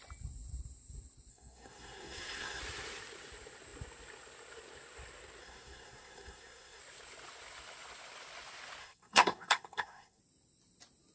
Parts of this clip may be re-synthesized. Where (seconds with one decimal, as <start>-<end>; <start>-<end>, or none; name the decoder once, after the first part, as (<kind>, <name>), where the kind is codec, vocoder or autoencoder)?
1.3-2.6 (codec, SNAC); 5.4-6.8; 8.8-10.2